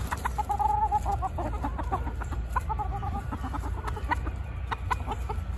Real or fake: fake